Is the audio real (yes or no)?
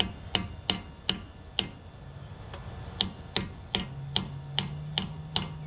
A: yes